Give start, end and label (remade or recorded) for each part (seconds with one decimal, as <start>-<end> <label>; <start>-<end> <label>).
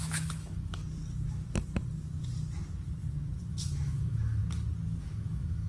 0.0-0.8 remade; 0.8-3.5 recorded; 3.5-4.4 remade; 4.4-5.0 recorded; 5.0-5.7 remade